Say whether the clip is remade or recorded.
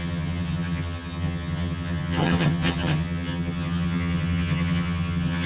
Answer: remade